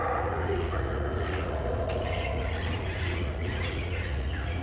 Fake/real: fake